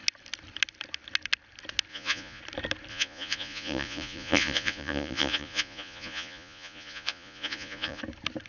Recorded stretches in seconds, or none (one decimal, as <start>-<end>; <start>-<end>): 0.0-1.9; 2.4-2.9; 8.0-8.5